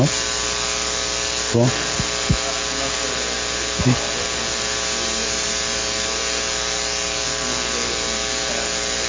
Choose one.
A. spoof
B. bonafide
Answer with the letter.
B